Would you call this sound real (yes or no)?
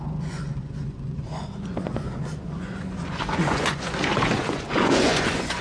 no